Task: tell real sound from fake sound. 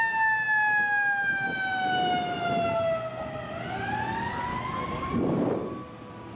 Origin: real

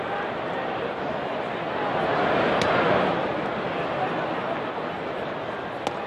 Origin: real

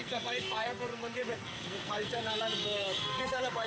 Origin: fake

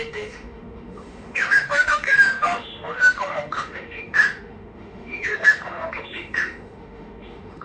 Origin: fake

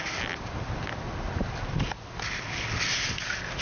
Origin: real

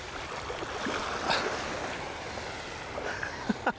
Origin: real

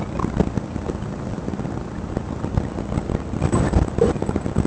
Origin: real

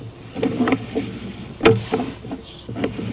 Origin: real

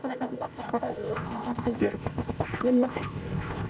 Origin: fake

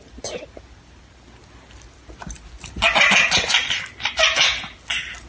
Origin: real